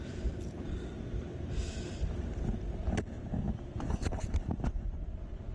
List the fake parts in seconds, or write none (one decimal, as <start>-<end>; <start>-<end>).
0.0-0.9; 4.2-5.5